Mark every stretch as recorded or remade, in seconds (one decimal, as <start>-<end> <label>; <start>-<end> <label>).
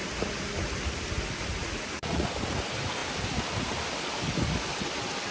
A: 0.0-1.6 recorded; 1.6-2.3 remade; 2.3-5.3 recorded